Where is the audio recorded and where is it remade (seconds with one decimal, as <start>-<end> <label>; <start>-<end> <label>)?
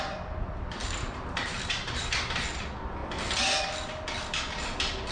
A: 0.0-0.8 recorded; 0.8-2.0 remade; 2.0-5.1 recorded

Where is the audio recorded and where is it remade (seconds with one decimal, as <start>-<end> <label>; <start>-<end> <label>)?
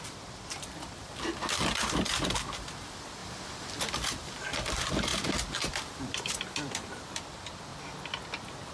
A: 0.0-3.2 remade; 3.2-3.8 recorded; 3.8-5.1 remade; 5.1-5.7 recorded; 5.7-7.7 remade; 7.7-8.7 recorded